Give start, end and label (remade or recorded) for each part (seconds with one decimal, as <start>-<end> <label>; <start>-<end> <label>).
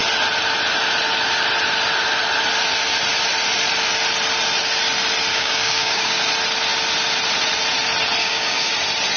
0.0-5.3 recorded; 5.3-6.2 remade; 6.2-8.2 recorded; 8.2-8.7 remade; 8.7-9.2 recorded